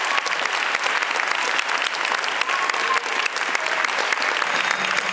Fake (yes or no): no